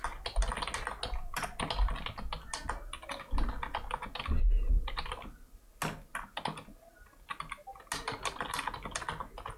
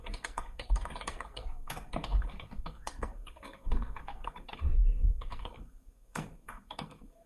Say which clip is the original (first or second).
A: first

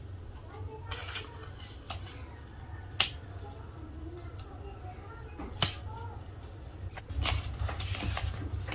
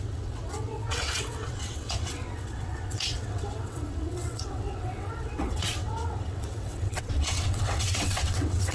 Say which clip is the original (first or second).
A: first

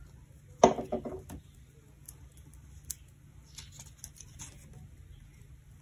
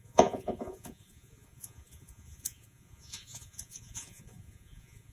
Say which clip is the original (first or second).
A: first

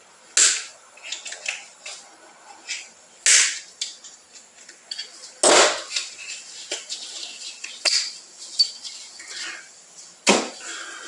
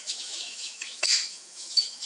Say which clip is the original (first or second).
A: first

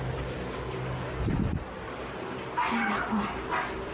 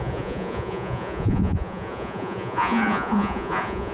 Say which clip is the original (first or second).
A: first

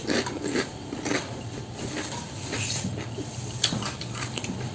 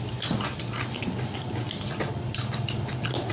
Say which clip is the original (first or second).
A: second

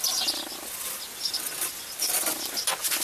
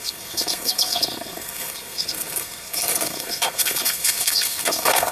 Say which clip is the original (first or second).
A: first